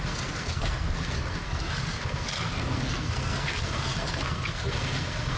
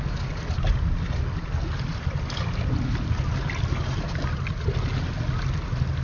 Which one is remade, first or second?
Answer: first